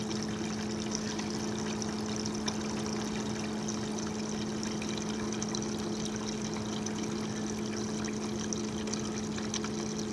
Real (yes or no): yes